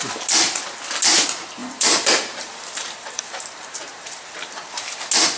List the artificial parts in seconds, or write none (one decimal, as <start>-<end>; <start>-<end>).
1.6-4.8